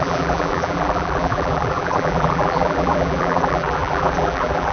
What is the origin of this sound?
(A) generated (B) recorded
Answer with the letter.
A